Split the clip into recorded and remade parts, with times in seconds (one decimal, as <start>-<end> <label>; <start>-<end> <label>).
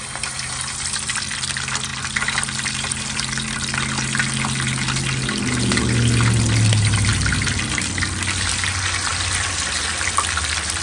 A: 0.0-7.1 recorded; 7.1-8.0 remade; 8.0-10.8 recorded